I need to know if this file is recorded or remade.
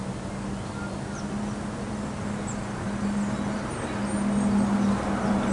recorded